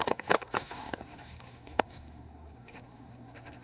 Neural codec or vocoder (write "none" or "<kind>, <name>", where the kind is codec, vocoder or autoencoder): codec, SNAC